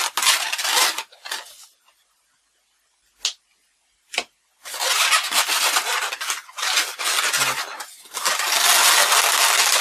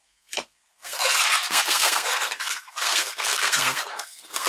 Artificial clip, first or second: second